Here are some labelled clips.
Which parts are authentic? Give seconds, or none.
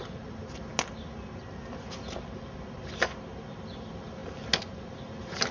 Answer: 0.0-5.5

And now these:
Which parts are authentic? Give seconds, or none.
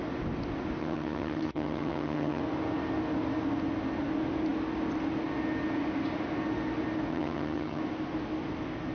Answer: 0.0-0.8; 2.4-7.1; 7.8-8.9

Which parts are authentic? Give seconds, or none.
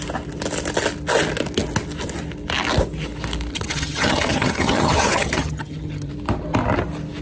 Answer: 0.0-3.5; 6.1-7.2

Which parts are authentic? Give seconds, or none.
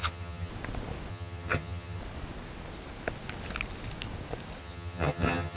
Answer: 0.5-1.1; 2.0-4.6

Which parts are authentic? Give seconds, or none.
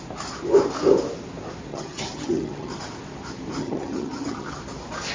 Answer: 0.0-1.7; 2.8-3.6; 4.6-5.1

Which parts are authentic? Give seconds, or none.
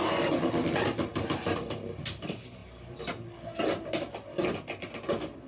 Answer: 0.0-5.5